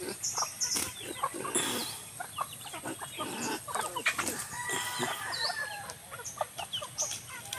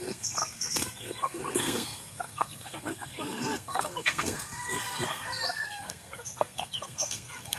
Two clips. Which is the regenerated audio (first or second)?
second